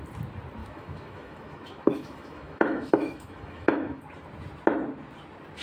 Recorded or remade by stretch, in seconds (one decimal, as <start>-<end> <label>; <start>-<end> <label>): 0.0-0.6 recorded; 0.6-4.0 remade; 4.0-5.6 recorded